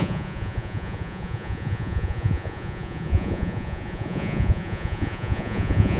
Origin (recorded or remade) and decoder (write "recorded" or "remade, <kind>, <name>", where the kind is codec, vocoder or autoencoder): remade, vocoder, Vocos